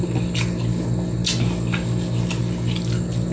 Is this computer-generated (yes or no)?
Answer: no